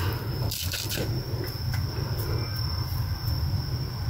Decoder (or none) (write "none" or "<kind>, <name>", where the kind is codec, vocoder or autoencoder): none